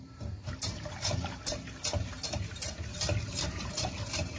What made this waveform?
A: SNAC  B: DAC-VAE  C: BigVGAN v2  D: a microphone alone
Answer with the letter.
C